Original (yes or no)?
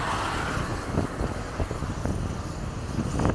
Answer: yes